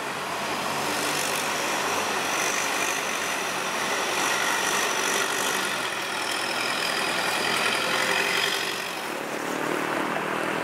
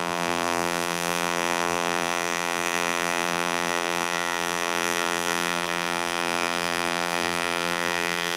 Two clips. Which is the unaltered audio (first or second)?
first